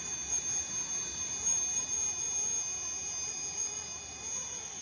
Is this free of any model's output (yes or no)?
yes